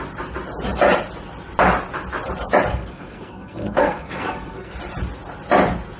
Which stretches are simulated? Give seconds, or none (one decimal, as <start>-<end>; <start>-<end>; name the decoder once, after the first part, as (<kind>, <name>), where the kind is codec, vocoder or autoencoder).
2.7-4.7 (codec, SNAC)